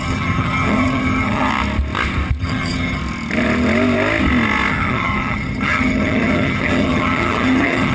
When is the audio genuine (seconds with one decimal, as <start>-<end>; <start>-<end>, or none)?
1.5-2.4; 3.0-4.7